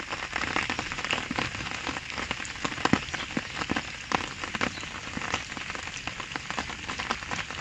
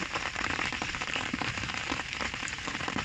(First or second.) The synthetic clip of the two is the second